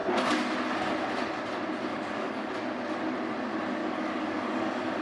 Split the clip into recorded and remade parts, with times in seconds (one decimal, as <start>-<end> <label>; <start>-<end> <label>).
0.0-1.9 recorded; 1.9-2.5 remade; 2.5-3.8 recorded; 3.8-5.0 remade